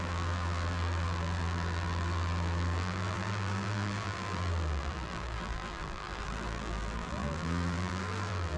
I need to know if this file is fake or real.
fake